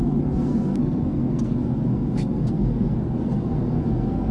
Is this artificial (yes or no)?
yes